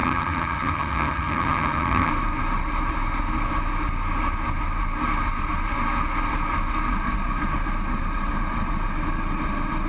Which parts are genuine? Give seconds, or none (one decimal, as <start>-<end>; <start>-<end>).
2.1-9.9